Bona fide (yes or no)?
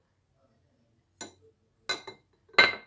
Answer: yes